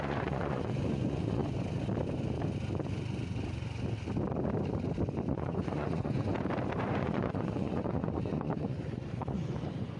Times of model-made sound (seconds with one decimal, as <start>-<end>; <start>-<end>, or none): 0.0-1.4; 5.3-6.3; 6.9-10.0